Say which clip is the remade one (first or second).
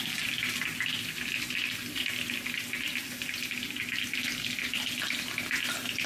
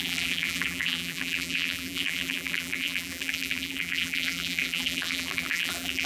second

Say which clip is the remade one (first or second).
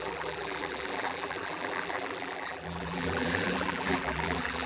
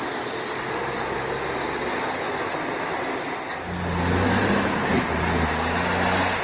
first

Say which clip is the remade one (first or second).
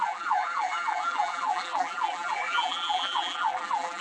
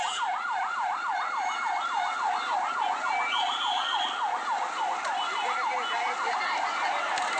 first